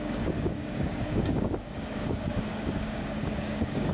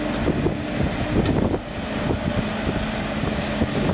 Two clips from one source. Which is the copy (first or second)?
first